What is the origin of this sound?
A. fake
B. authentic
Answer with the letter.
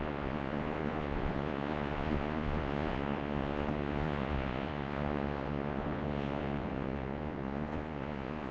A